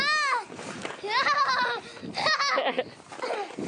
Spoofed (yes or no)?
no